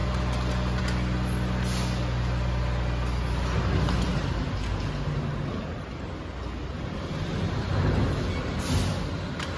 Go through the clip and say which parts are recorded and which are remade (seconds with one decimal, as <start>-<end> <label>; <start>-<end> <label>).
0.0-4.1 recorded; 4.1-4.7 remade; 4.7-9.6 recorded